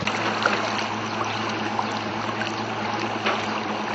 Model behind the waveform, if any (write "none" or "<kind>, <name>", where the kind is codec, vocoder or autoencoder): none